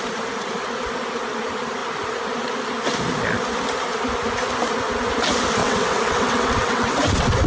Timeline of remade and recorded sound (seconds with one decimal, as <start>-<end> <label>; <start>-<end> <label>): 0.0-5.6 recorded; 5.6-7.5 remade